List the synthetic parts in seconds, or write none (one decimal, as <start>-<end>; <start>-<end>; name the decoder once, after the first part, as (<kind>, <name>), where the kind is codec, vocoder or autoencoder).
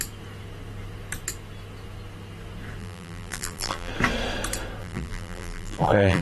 2.8-3.9 (vocoder, BigVGAN v2); 4.8-6.2